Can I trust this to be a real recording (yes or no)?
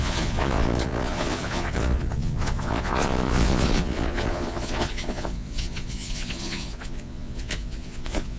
no